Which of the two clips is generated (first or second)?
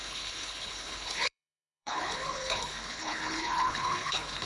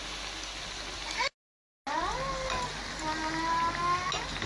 first